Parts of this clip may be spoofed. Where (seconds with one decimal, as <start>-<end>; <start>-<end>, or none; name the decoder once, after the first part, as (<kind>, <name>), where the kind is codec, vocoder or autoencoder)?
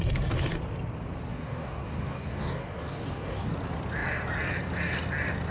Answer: 1.3-3.5 (codec, DAC)